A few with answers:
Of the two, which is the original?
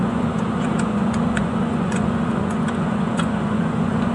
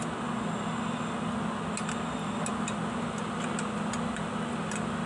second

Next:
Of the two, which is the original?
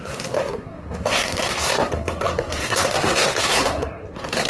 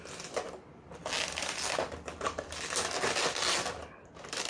second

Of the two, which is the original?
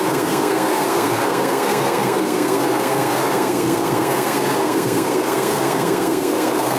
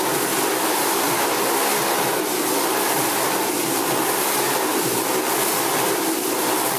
second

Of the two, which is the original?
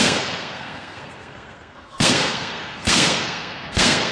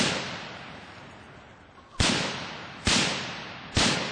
second